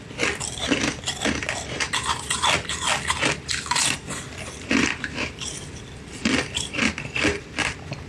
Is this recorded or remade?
remade